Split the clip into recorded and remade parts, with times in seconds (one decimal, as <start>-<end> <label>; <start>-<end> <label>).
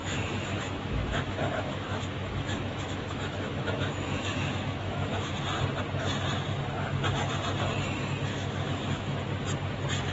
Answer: 0.0-5.3 remade; 5.3-8.3 recorded; 8.3-9.2 remade; 9.2-10.1 recorded